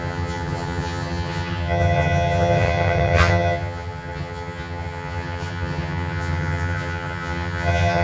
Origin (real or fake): fake